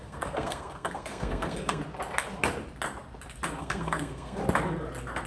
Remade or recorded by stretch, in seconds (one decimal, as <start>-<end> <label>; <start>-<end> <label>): 0.0-1.8 remade; 1.8-3.6 recorded; 3.6-4.4 remade; 4.4-5.3 recorded

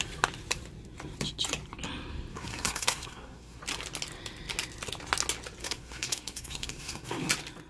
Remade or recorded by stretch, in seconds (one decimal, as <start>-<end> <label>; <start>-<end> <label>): 0.0-2.3 recorded; 2.3-3.6 remade; 3.6-5.6 recorded; 5.6-7.3 remade; 7.3-7.7 recorded

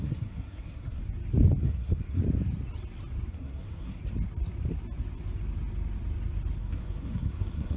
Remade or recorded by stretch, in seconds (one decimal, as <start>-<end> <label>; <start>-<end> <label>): 0.0-1.0 remade; 1.0-1.6 recorded; 1.6-2.2 remade; 2.2-3.3 recorded; 3.3-4.0 remade; 4.0-6.6 recorded; 6.6-7.8 remade

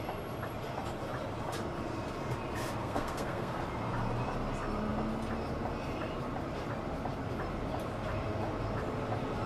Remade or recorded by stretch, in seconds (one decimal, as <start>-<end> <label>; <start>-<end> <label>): 0.0-2.8 recorded; 2.8-3.6 remade; 3.6-9.5 recorded

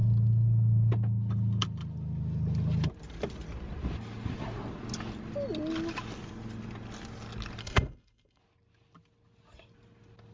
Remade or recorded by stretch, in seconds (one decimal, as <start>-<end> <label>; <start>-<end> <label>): 0.0-7.6 recorded; 7.6-8.4 remade; 8.4-10.3 recorded

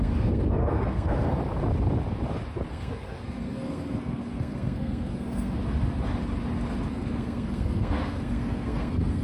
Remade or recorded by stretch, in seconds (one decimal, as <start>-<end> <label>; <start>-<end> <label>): 0.0-1.4 remade; 1.4-2.7 recorded; 2.7-5.6 remade; 5.6-6.9 recorded; 6.9-9.2 remade